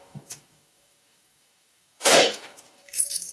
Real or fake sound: fake